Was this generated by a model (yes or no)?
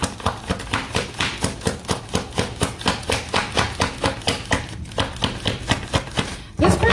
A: no